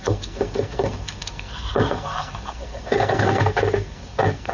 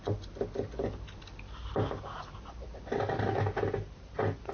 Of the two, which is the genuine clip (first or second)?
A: second